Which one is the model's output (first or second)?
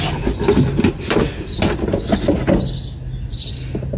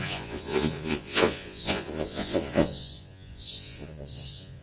second